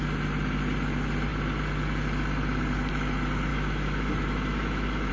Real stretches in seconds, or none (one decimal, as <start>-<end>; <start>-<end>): 0.0-3.5